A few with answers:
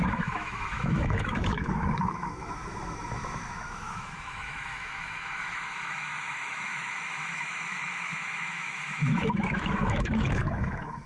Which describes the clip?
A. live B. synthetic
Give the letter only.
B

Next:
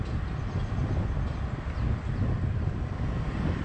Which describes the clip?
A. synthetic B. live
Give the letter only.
B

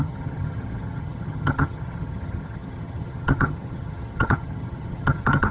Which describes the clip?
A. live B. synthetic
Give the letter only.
B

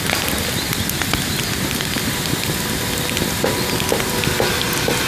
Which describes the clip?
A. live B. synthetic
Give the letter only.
A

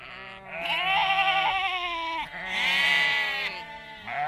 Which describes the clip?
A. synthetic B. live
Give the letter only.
B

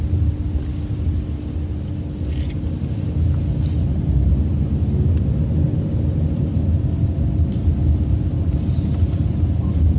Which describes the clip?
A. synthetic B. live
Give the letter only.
B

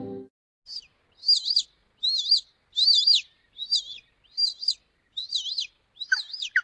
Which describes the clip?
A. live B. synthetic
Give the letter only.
A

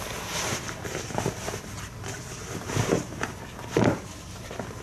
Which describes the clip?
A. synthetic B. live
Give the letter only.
B